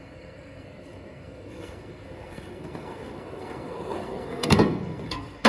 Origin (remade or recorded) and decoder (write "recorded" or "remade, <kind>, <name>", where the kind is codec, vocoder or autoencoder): remade, codec, SNAC